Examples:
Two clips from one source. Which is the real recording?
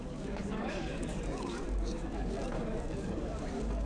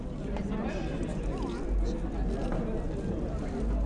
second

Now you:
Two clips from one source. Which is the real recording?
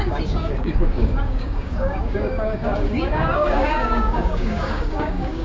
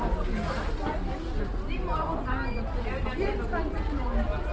second